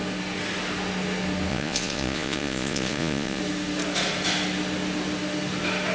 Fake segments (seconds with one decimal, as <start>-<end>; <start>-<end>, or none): 1.5-3.4